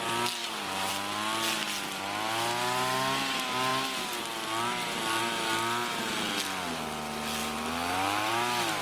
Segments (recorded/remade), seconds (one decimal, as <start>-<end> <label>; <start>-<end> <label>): 0.0-0.4 recorded; 0.4-0.9 remade; 0.9-7.4 recorded; 7.4-8.3 remade; 8.3-8.8 recorded